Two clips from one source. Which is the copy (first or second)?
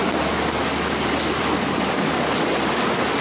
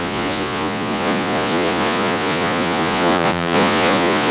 second